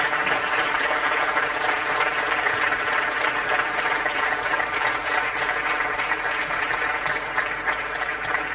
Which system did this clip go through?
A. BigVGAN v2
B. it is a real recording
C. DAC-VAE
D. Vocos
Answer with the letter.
A